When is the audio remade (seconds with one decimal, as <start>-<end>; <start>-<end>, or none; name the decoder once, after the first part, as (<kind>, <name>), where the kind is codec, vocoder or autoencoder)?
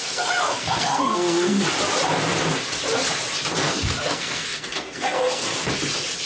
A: 0.0-1.7 (codec, SNAC); 3.6-5.7